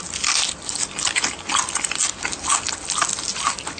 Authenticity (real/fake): real